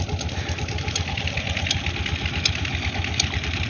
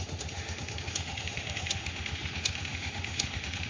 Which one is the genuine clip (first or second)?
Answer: first